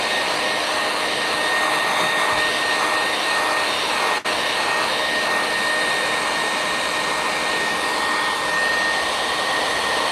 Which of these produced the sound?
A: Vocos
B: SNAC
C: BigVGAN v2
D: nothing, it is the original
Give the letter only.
D